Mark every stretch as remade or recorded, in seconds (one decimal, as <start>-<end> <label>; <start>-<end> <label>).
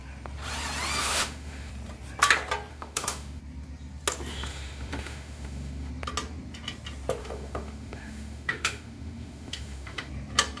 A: 0.0-1.0 recorded; 1.0-1.7 remade; 1.7-2.7 recorded; 2.7-3.4 remade; 3.4-4.3 recorded; 4.3-5.9 remade; 5.9-7.2 recorded; 7.2-10.1 remade; 10.1-10.6 recorded